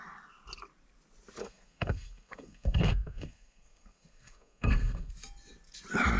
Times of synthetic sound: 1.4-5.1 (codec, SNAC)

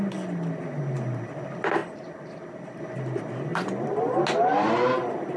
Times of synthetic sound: 1.8-2.8 (vocoder, BigVGAN v2); 3.5-4.1

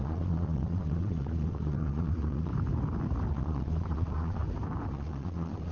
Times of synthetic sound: 0.0-2.5 (vocoder, Vocos); 3.3-4.4; 4.9-5.7

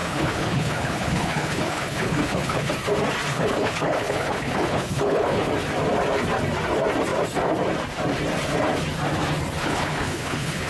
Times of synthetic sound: 0.0-2.7 (codec, HILCodec); 3.3-5.5; 9.6-10.7

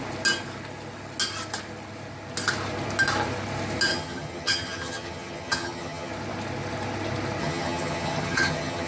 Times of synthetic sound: 3.9-6.1 (vocoder, HiFi-GAN); 7.4-8.9

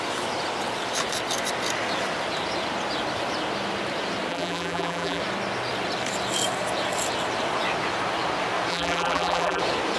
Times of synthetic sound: 4.3-5.2 (vocoder, BigVGAN v2); 8.7-9.6